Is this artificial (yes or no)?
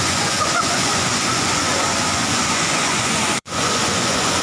yes